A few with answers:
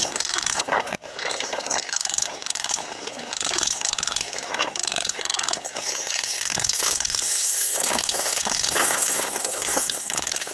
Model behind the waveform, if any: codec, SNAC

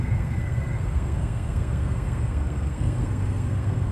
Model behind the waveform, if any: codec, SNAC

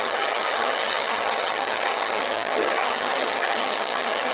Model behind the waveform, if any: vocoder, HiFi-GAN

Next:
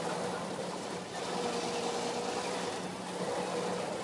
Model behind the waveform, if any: none